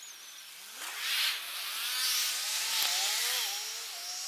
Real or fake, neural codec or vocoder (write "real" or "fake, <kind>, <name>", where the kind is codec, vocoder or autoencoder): real